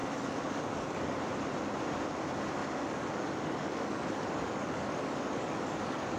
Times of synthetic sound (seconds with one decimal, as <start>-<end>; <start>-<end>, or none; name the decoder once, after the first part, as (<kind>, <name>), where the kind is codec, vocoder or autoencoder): 0.0-1.2 (codec, DAC); 2.6-6.2